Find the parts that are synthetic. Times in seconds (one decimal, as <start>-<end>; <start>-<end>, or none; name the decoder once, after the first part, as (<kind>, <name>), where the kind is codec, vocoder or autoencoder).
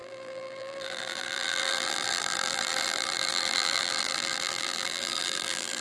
0.0-5.8 (vocoder, BigVGAN v2)